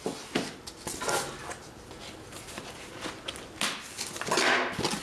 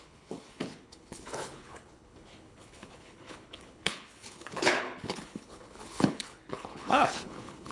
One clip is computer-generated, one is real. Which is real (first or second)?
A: first